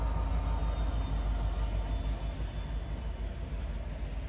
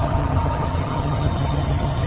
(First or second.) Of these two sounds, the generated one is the second